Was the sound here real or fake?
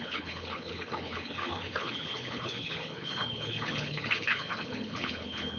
fake